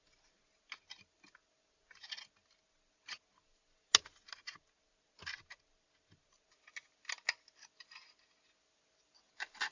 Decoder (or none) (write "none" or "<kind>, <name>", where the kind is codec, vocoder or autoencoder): none